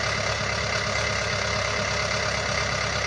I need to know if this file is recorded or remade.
recorded